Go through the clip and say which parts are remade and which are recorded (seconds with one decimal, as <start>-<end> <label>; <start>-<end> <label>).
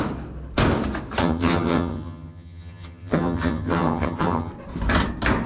0.0-1.2 recorded; 1.2-4.5 remade; 4.5-5.5 recorded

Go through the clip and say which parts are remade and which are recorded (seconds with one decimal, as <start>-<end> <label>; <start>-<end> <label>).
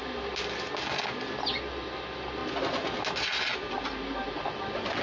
0.0-5.0 recorded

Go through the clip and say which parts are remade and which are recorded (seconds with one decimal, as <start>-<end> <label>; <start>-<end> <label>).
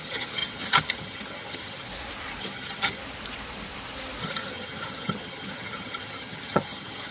0.0-1.9 remade; 1.9-2.4 recorded; 2.4-3.0 remade; 3.0-4.2 recorded; 4.2-7.1 remade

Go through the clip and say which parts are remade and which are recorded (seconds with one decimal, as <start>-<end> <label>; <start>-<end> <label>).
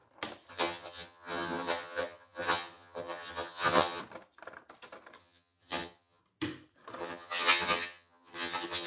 0.0-0.5 recorded; 0.5-4.0 remade; 4.0-5.2 recorded; 5.2-6.2 remade; 6.2-7.0 recorded; 7.0-8.9 remade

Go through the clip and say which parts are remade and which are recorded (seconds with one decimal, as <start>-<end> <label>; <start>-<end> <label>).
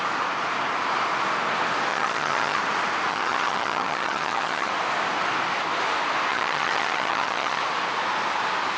0.0-1.9 recorded; 1.9-2.6 remade; 2.6-3.1 recorded; 3.1-4.7 remade; 4.7-6.3 recorded; 6.3-7.6 remade; 7.6-8.8 recorded